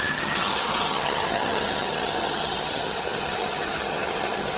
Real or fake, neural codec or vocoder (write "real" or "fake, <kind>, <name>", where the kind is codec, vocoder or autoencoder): fake, vocoder, HiFi-GAN